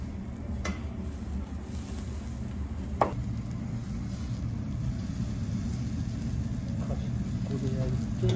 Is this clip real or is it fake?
real